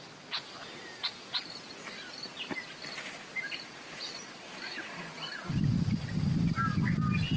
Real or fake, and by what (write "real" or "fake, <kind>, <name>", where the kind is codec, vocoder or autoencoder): real